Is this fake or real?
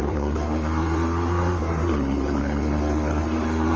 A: fake